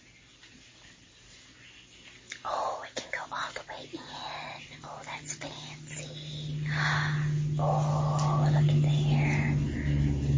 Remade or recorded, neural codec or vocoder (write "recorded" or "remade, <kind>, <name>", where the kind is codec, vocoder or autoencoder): recorded